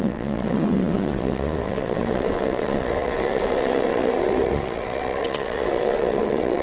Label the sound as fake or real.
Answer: fake